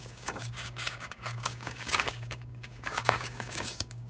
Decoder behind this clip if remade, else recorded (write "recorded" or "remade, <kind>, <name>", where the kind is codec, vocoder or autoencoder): remade, codec, DAC